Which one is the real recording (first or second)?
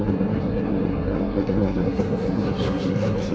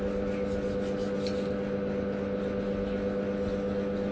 second